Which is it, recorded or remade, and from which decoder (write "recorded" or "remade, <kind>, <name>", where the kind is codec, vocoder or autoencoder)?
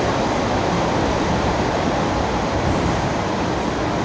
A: recorded